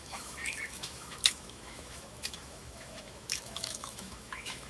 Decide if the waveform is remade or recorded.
remade